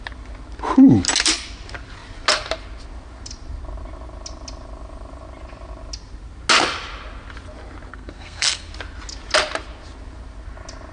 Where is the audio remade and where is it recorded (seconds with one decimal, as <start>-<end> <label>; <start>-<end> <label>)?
0.0-7.9 recorded; 7.9-8.7 remade; 8.7-10.9 recorded